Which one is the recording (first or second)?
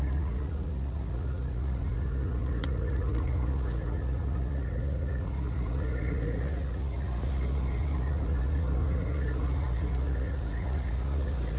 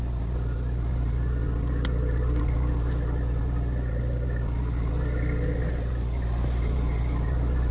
second